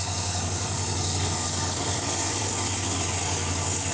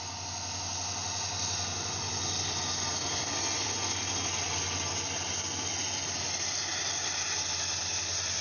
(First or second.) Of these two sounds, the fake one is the first